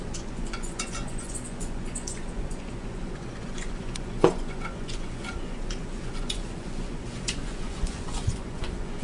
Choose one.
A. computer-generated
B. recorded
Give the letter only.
A